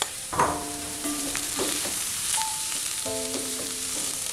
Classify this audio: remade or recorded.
remade